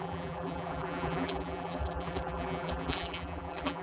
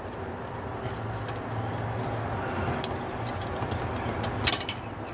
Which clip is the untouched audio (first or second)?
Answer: second